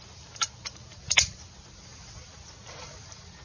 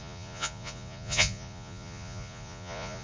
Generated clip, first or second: second